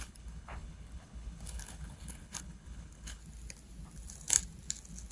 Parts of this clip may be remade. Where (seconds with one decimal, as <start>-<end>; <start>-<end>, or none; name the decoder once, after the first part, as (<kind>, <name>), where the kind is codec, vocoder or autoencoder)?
0.0-3.2 (codec, HILCodec)